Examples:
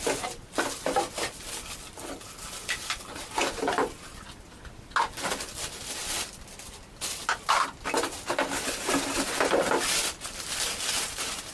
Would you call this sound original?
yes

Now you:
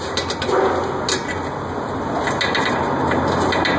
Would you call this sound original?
yes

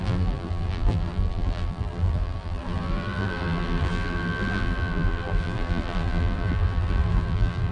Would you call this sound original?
no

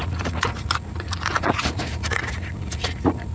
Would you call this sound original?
no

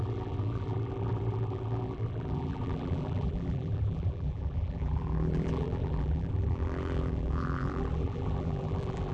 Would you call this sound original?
no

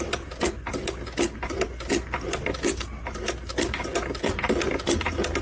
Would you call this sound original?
yes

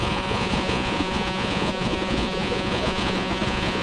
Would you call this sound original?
no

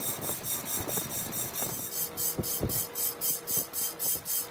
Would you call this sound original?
yes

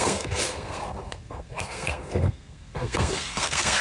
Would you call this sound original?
no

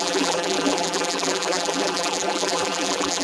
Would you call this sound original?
no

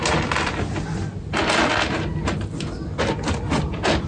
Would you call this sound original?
yes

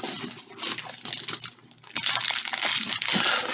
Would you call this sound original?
yes